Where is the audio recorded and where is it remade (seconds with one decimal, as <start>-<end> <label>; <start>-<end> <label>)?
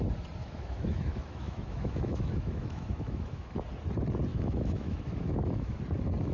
0.0-0.4 recorded; 0.4-3.6 remade; 3.6-4.3 recorded; 4.3-5.8 remade; 5.8-6.3 recorded